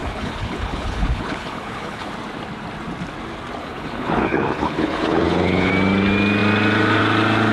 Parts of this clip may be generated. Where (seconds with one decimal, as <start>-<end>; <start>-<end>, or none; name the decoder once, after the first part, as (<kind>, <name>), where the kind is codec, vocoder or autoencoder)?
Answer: 0.0-2.1 (codec, HILCodec); 3.6-5.7